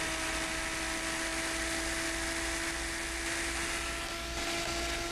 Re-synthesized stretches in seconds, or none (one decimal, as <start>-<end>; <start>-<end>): none